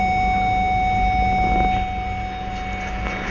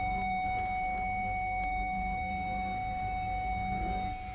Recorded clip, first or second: first